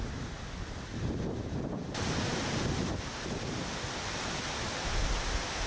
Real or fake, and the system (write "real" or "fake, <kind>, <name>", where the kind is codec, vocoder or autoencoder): real